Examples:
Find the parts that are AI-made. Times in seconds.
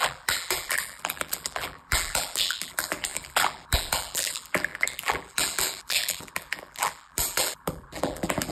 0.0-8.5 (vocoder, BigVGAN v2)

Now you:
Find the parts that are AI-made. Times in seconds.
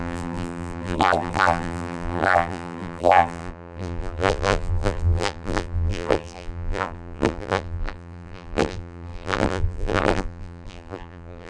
0.0-11.5 (vocoder, BigVGAN v2)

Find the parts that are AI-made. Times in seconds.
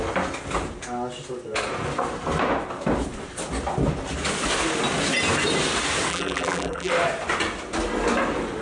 6.1-6.9 (vocoder, BigVGAN v2)